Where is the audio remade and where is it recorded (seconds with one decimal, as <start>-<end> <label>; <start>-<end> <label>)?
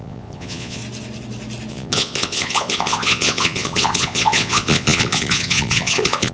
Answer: 0.0-0.8 remade; 0.8-1.7 recorded; 1.7-6.3 remade